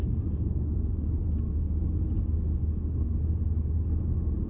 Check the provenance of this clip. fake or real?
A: real